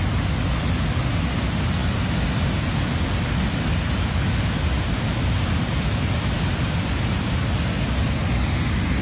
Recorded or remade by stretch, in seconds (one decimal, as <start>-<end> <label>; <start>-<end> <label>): 0.0-9.0 recorded